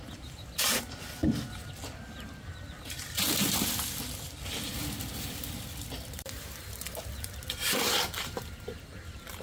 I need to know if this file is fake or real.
fake